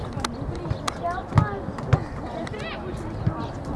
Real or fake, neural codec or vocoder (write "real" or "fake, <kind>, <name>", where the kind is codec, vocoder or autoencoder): real